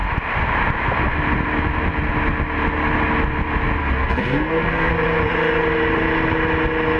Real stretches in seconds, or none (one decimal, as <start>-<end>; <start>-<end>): 0.0-3.8; 4.9-7.0